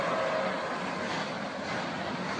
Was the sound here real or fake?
real